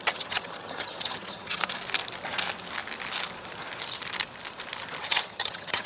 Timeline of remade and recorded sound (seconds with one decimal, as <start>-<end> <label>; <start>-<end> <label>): 0.0-1.6 remade; 1.6-5.0 recorded; 5.0-5.9 remade